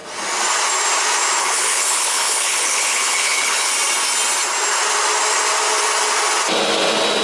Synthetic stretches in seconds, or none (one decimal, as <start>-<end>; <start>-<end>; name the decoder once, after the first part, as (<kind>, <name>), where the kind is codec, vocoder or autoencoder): 1.4-3.7 (codec, HILCodec)